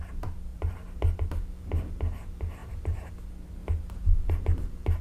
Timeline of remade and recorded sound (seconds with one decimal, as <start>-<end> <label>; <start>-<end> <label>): 0.0-0.5 recorded; 0.5-1.0 remade; 1.0-2.6 recorded; 2.6-3.1 remade; 3.1-3.6 recorded; 3.6-4.3 remade; 4.3-5.0 recorded